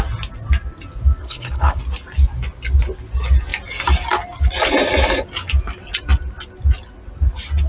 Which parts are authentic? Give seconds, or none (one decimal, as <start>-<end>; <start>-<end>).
0.0-1.2; 1.8-7.7